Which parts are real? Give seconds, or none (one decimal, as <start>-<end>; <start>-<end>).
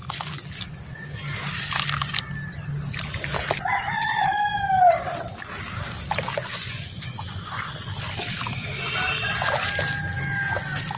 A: 0.0-6.4; 7.7-11.0